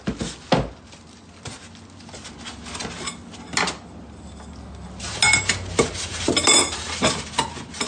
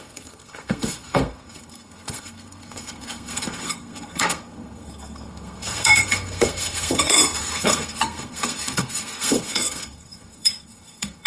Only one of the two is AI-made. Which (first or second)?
second